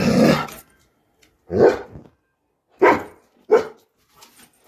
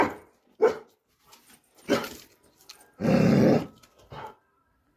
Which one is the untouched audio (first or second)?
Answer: first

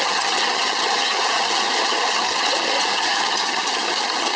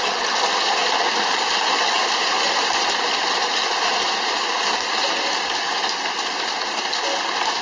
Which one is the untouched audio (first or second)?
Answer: second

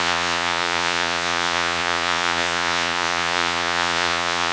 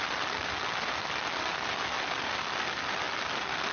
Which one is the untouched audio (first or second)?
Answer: second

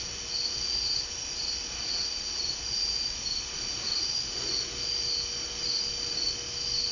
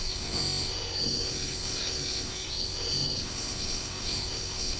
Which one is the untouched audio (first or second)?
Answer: first